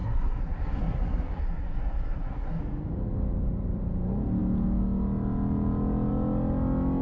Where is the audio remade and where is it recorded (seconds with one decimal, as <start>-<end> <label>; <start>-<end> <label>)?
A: 0.0-2.6 remade; 2.6-7.0 recorded